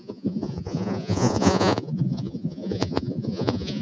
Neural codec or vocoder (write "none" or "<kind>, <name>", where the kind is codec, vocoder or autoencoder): vocoder, Vocos